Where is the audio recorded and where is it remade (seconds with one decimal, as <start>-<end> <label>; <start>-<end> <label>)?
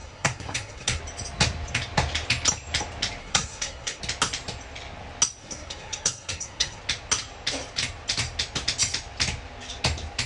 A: 0.0-1.0 remade; 1.0-3.2 recorded; 3.2-4.0 remade; 4.0-5.4 recorded; 5.4-6.8 remade; 6.8-10.3 recorded